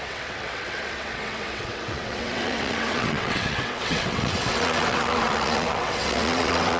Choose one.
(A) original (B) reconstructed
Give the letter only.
B